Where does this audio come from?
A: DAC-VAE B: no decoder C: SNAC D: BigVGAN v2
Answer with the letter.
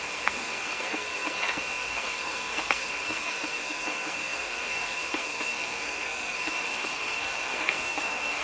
C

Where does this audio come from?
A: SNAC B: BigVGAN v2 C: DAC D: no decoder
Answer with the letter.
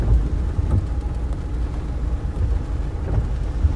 D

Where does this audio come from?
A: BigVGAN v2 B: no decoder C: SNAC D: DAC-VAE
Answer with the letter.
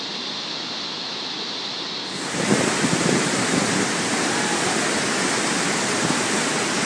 B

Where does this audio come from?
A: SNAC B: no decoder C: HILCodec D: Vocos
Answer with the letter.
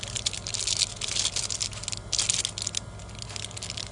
B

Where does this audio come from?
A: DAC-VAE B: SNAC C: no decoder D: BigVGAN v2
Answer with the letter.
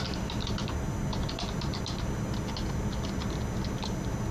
C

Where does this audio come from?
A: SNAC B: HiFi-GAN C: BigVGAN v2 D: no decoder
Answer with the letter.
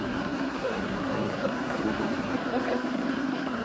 A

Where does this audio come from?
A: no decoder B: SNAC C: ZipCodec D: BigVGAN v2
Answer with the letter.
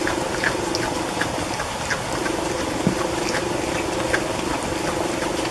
A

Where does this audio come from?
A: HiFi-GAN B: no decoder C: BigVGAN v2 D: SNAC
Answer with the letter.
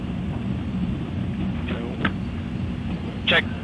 B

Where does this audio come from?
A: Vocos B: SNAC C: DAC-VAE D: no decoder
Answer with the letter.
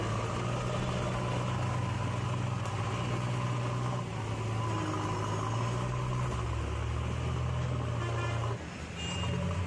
D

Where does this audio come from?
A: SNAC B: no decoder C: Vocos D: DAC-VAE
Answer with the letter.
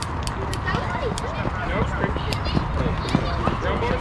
B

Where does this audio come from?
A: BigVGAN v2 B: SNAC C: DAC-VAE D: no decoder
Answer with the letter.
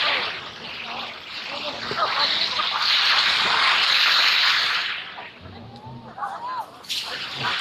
D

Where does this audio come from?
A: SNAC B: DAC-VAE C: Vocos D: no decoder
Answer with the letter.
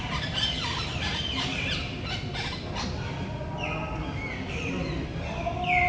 D